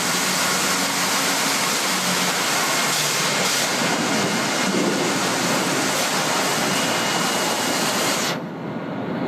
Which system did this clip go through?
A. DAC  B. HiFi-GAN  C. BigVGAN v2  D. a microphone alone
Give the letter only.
D